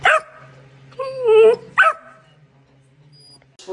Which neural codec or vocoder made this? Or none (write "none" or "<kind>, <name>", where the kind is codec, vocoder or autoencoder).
none